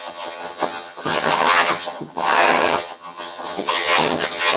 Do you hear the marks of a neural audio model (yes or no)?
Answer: yes